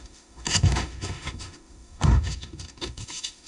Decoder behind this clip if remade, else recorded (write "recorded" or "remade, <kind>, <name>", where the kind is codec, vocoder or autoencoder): remade, autoencoder, DAC-VAE